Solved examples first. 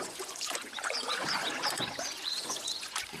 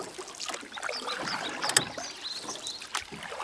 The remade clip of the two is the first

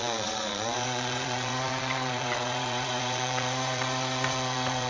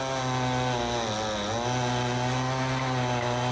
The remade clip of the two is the first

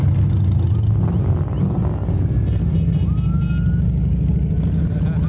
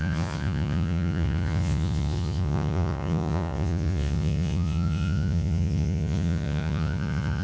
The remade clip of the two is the second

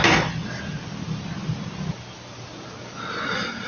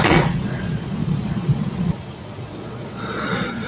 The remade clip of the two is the second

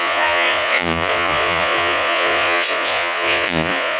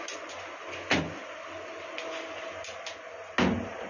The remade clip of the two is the first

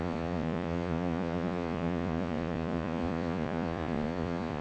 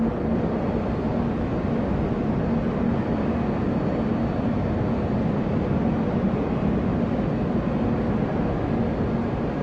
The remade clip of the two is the first